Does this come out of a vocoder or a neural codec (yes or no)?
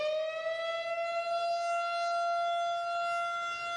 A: no